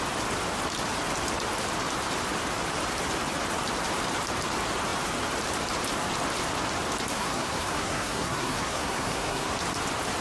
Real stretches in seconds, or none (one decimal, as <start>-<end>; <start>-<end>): 0.0-7.1; 9.5-10.2